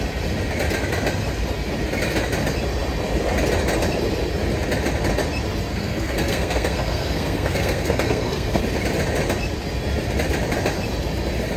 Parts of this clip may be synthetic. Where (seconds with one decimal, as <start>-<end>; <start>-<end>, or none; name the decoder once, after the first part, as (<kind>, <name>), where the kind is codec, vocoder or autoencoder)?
5.7-8.6 (codec, SNAC)